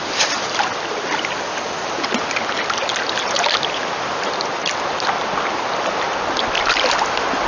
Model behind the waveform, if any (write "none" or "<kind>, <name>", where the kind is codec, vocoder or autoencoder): none